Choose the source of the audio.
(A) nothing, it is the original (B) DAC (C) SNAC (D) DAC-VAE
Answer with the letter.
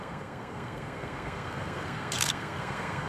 C